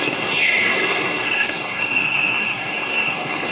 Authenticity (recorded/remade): remade